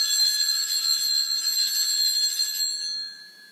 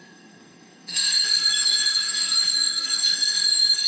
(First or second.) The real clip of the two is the first